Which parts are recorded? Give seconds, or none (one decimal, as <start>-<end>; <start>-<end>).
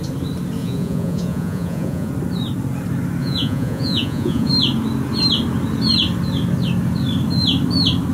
0.0-0.6; 2.1-3.2; 4.5-8.1